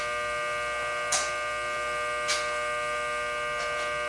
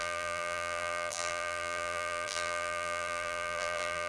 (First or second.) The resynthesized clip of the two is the second